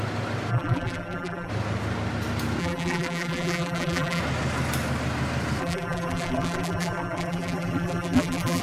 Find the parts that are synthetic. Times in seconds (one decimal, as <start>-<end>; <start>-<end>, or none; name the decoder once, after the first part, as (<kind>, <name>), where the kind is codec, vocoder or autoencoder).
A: 0.5-1.5 (vocoder, BigVGAN v2); 2.6-4.2; 5.6-8.6